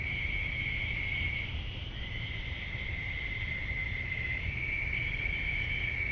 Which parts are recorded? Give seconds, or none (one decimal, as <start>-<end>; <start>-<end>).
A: 0.0-1.1; 4.8-6.1